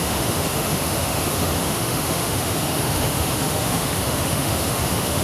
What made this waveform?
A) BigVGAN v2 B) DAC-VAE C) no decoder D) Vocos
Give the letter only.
B